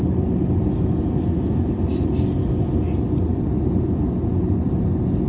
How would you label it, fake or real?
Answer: real